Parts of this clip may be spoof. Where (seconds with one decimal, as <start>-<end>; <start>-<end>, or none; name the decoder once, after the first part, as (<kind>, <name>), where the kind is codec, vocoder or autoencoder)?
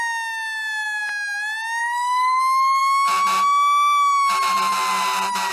1.8-2.4 (codec, SNAC)